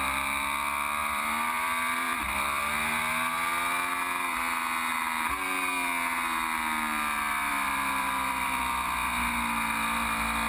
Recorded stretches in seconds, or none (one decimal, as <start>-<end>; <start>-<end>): 0.0-1.0; 2.6-10.5